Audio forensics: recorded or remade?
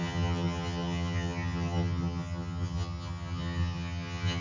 remade